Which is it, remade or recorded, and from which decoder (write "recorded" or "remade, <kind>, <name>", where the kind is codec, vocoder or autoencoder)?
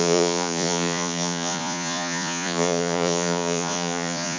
remade, vocoder, Vocos